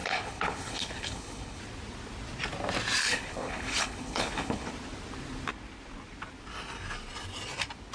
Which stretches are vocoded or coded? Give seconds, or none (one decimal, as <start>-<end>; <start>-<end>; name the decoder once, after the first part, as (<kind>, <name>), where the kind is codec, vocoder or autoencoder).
0.0-1.6 (codec, HILCodec); 3.0-4.7